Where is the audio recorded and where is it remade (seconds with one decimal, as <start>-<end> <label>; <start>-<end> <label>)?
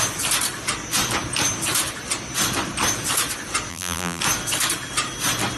0.0-3.7 recorded; 3.7-4.2 remade; 4.2-5.6 recorded